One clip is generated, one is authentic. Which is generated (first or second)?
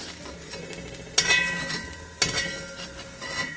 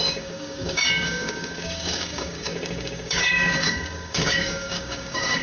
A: second